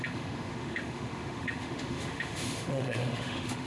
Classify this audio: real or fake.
fake